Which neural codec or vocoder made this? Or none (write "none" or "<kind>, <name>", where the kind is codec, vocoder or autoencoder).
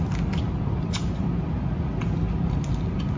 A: none